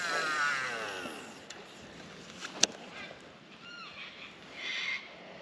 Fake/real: real